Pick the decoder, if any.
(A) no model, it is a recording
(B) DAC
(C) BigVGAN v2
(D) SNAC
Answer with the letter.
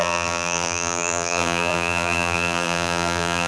C